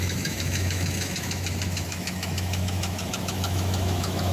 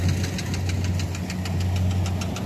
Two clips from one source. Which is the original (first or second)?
second